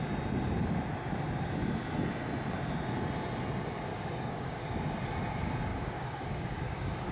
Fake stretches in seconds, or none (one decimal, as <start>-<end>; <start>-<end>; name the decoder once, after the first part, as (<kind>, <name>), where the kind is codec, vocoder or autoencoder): 3.9-4.6 (codec, DAC); 5.7-7.1